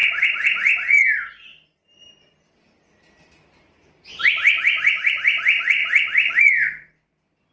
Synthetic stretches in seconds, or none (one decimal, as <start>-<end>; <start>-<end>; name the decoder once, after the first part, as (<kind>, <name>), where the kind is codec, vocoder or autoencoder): 2.9-4.4 (vocoder, BigVGAN v2); 4.9-7.5